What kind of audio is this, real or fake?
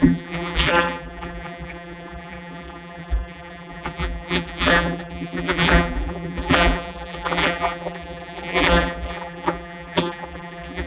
fake